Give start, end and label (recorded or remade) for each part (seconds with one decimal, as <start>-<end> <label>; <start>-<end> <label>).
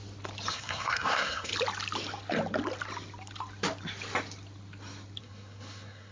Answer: 0.0-0.5 recorded; 0.5-1.5 remade; 1.5-5.2 recorded; 5.2-6.1 remade